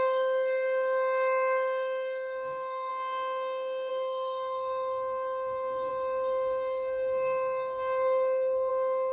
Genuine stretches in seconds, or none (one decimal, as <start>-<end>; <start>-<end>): 2.9-3.9